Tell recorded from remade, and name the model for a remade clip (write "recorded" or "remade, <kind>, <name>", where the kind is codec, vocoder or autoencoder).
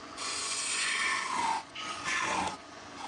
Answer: remade, vocoder, Vocos